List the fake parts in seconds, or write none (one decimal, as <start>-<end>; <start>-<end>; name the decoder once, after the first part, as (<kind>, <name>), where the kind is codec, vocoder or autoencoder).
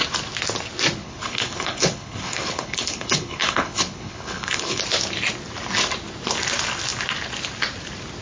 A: 1.0-4.8 (codec, HILCodec)